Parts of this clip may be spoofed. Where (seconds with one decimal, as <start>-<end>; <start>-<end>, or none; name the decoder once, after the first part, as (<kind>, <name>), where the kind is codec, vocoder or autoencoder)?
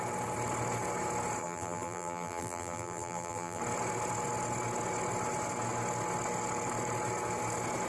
1.4-3.6 (vocoder, BigVGAN v2)